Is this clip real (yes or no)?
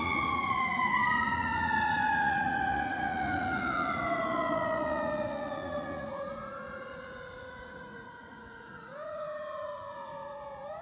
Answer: no